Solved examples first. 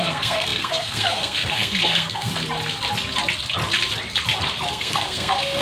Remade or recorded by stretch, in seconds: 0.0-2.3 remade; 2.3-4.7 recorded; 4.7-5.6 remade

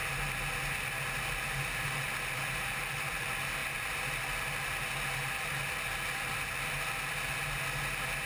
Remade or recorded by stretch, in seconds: 0.0-8.2 recorded